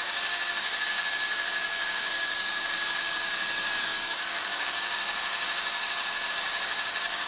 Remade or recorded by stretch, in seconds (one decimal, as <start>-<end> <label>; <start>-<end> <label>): 0.0-7.3 remade